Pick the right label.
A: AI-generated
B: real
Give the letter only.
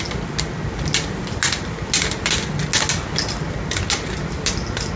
B